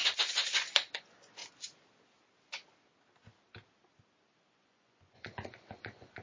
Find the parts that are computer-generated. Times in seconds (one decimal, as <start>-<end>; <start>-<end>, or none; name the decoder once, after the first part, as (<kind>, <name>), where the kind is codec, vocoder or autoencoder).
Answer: 0.0-1.4 (vocoder, Vocos); 4.5-6.2